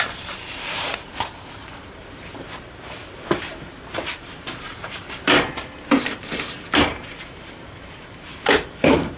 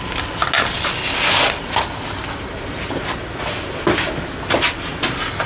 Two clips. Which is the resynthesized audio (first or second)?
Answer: first